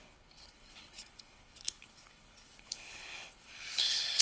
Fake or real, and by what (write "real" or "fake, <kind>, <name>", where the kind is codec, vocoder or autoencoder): fake, codec, HILCodec